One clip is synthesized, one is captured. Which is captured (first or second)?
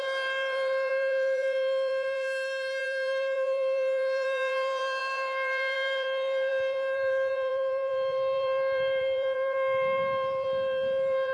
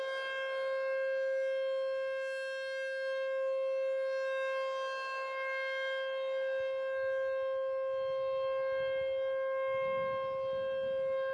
second